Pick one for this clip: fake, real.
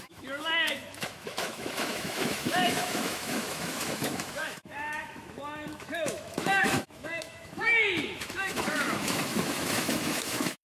fake